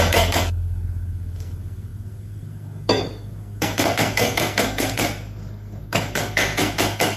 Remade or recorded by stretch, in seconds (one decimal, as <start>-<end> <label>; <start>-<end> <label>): 0.0-7.2 remade